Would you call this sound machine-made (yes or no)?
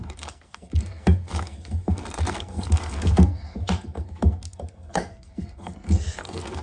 yes